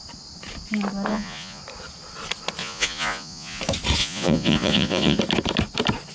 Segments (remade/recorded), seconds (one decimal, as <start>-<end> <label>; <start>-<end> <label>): 0.0-1.1 recorded; 1.1-1.6 remade; 1.6-2.6 recorded; 2.6-3.6 remade; 3.6-4.0 recorded; 4.0-5.2 remade; 5.2-6.1 recorded